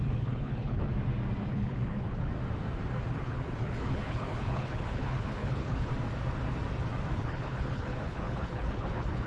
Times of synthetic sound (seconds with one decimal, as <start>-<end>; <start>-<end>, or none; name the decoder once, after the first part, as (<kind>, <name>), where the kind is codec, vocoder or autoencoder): 0.0-0.9 (codec, HILCodec); 1.5-2.3; 3.1-5.9; 7.1-9.3